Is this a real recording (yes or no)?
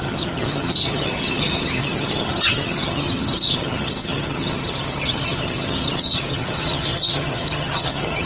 no